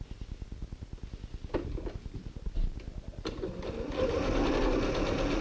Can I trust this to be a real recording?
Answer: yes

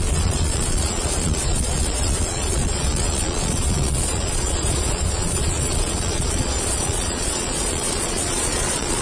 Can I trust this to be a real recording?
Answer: no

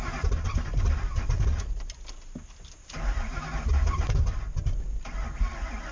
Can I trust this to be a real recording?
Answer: yes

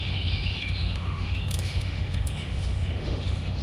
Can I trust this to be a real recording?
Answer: no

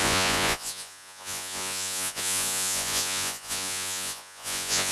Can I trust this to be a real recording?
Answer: no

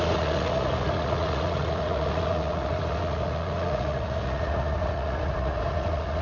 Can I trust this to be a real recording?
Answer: no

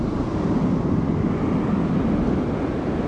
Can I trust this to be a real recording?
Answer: yes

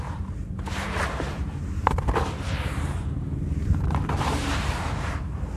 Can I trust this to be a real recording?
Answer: no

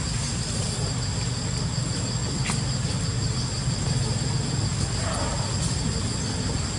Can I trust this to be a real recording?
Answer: yes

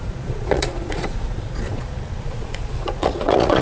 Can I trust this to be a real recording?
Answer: no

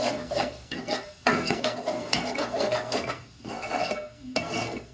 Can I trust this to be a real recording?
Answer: no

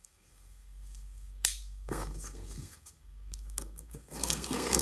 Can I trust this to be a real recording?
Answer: no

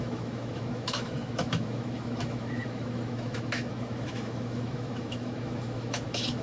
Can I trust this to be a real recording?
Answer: no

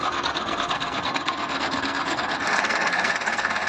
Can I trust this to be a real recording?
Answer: no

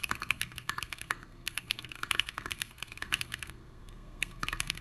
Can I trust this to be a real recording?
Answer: no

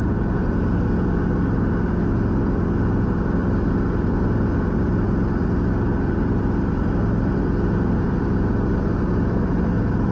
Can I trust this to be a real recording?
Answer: yes